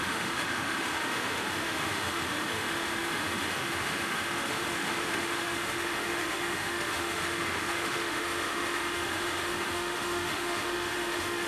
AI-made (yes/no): yes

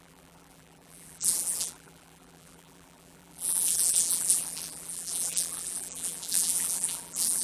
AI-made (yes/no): yes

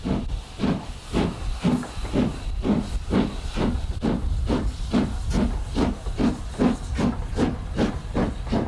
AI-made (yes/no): no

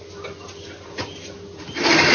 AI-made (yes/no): no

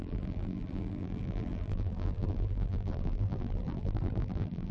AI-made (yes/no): yes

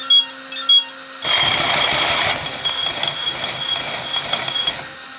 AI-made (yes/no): no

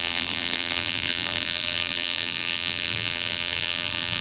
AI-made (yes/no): yes